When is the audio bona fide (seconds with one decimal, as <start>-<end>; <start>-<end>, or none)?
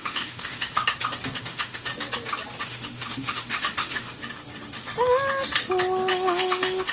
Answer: 0.8-1.4; 1.9-2.6; 4.2-6.1